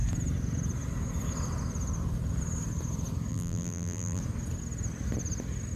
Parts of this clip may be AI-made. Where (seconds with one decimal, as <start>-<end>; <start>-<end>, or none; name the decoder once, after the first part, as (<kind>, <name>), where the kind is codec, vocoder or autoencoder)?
3.3-4.2 (vocoder, BigVGAN v2)